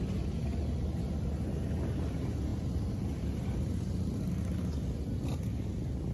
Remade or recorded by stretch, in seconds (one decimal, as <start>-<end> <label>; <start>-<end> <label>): 0.0-2.5 recorded; 2.5-4.3 remade; 4.3-6.1 recorded